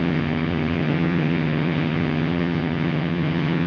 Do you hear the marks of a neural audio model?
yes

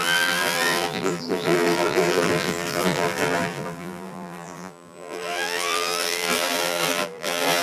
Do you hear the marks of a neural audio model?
yes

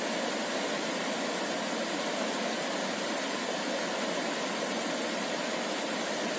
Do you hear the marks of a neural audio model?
no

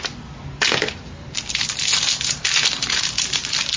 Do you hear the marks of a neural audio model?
no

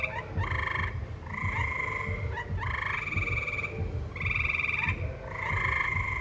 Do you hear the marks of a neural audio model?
no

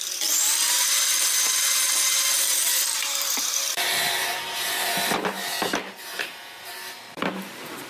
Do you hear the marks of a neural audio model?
yes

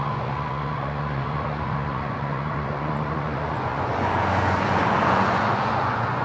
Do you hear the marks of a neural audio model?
yes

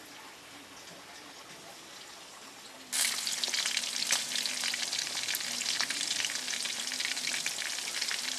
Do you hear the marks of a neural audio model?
no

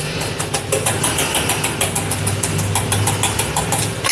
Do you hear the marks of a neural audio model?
no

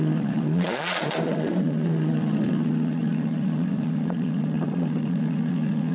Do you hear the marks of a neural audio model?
yes